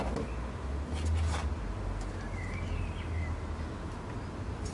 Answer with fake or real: real